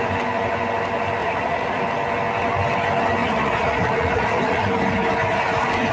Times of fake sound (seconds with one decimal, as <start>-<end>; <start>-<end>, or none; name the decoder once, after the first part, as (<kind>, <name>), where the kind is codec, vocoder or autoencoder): 1.2-1.8 (vocoder, Vocos); 3.2-4.7